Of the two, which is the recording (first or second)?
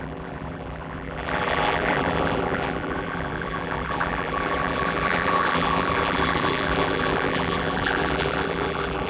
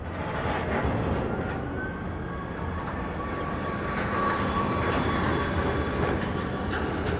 second